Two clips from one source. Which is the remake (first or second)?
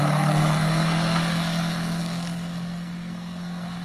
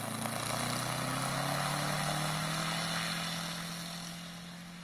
first